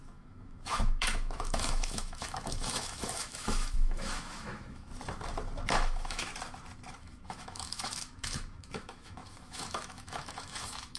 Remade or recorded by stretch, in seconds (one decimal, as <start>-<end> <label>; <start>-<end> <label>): 0.0-4.9 remade; 4.9-5.7 recorded; 5.7-6.3 remade; 6.3-7.0 recorded; 7.0-11.0 remade